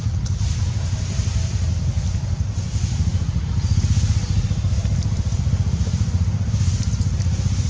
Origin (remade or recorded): recorded